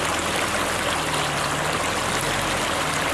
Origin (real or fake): real